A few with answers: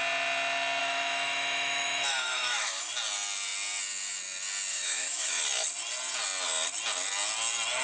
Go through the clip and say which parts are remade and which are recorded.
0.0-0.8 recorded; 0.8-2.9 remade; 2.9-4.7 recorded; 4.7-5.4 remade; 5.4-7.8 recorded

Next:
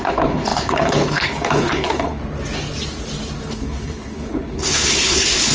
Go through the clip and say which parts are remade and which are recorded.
0.0-2.2 remade; 2.2-3.5 recorded; 3.5-5.5 remade

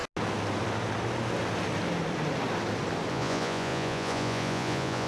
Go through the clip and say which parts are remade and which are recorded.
0.0-3.1 recorded; 3.1-5.1 remade

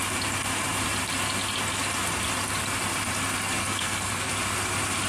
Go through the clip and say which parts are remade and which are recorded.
0.0-3.6 recorded; 3.6-4.3 remade; 4.3-5.1 recorded